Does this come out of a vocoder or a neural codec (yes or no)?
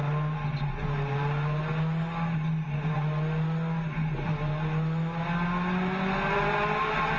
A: no